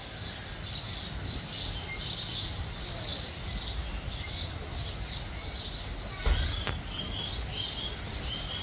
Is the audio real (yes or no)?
yes